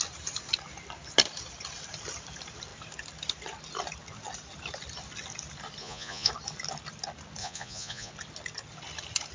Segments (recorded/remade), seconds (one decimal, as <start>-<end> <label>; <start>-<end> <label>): 0.0-5.8 recorded; 5.8-6.3 remade; 6.3-7.4 recorded; 7.4-8.1 remade; 8.1-9.3 recorded